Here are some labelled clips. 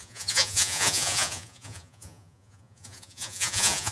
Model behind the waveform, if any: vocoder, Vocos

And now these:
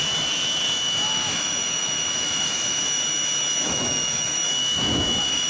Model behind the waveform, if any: autoencoder, DAC-VAE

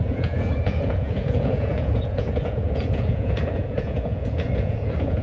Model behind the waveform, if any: vocoder, Vocos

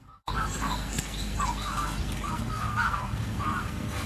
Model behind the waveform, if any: codec, SNAC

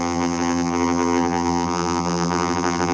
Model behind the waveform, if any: vocoder, BigVGAN v2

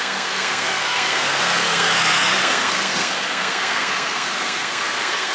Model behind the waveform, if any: codec, SNAC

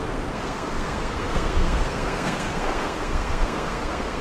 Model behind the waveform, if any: codec, SNAC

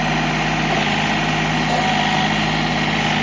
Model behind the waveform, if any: none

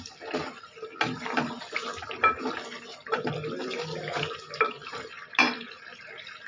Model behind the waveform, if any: none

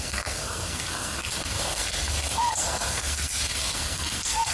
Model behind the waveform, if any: codec, SNAC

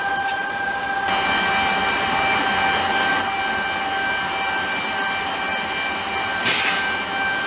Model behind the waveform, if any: none